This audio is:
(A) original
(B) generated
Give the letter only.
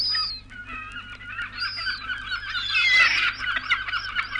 A